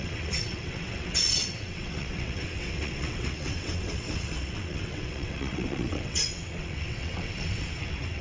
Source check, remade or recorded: remade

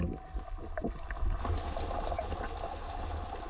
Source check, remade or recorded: recorded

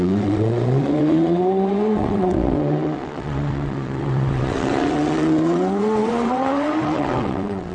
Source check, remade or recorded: remade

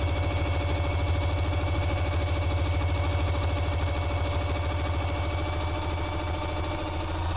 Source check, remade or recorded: recorded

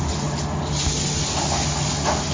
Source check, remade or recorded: recorded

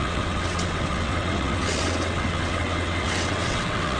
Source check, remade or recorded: remade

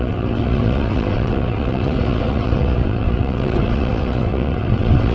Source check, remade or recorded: remade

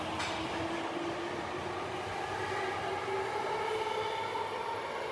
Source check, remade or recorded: recorded